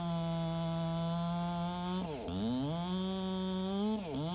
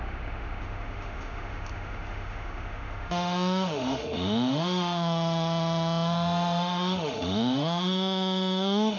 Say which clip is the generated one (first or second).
second